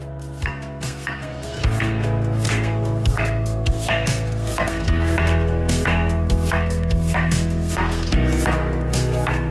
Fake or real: fake